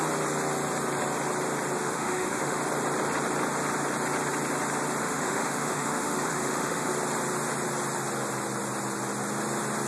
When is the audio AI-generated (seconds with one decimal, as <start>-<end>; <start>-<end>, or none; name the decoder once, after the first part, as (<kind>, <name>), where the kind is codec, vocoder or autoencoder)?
1.8-2.6 (autoencoder, DAC-VAE); 5.0-6.9